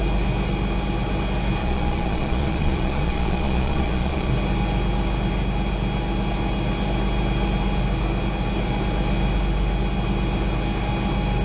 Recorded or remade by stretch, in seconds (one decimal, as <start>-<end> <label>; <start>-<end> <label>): 0.0-1.6 recorded; 1.6-4.3 remade; 4.3-11.4 recorded